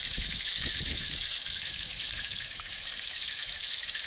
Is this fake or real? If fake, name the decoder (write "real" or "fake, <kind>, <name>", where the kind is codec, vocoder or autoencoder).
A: fake, autoencoder, DAC-VAE